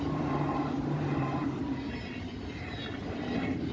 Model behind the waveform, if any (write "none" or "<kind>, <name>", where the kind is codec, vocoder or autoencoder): vocoder, BigVGAN v2